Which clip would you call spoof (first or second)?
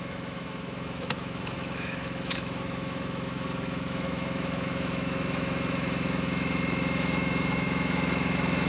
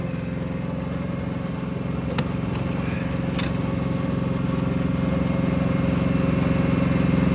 first